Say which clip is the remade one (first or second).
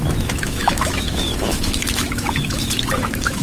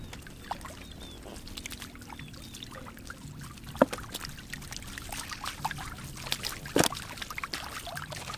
first